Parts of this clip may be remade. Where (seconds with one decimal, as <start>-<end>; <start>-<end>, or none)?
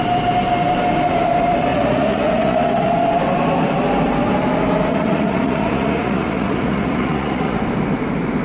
1.7-2.8; 4.9-7.6